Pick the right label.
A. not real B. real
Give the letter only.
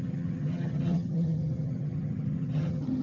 A